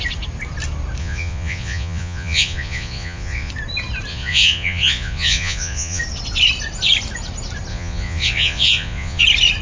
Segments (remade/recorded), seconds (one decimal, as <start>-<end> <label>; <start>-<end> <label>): 0.0-1.0 recorded; 1.0-3.5 remade; 3.5-4.1 recorded; 4.1-6.0 remade; 6.0-7.7 recorded; 7.7-9.2 remade; 9.2-9.6 recorded